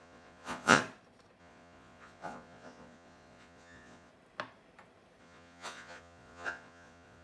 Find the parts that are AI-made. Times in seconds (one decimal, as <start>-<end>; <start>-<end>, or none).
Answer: 0.0-0.8; 1.4-4.1; 5.2-7.2